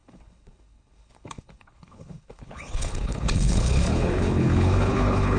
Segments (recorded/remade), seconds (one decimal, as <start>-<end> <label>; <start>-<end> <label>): 0.0-5.4 remade